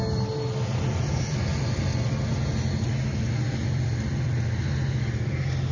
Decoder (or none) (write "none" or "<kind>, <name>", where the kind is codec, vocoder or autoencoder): none